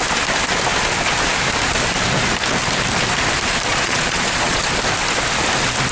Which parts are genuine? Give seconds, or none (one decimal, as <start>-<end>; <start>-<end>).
0.0-3.7; 4.6-5.9